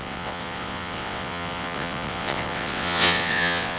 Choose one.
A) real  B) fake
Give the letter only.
B